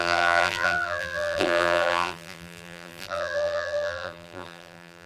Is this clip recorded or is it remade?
remade